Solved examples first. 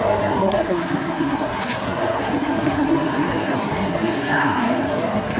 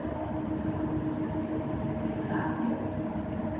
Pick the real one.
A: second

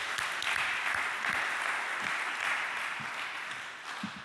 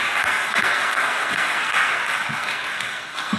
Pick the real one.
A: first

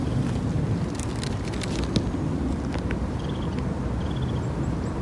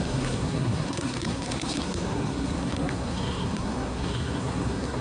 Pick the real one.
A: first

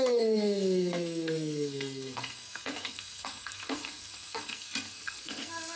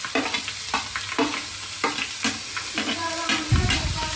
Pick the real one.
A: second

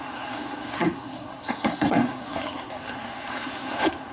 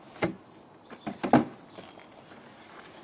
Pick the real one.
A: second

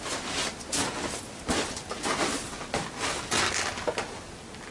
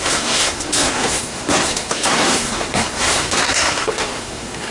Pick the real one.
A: first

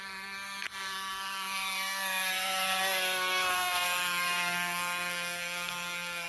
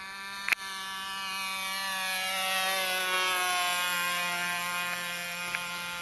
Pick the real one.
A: second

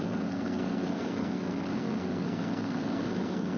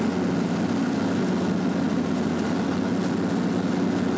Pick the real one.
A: second